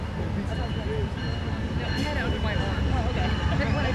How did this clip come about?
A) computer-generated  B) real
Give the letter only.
B